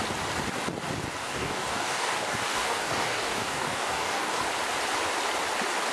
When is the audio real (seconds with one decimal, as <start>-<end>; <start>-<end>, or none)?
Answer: 0.0-1.2; 4.4-5.9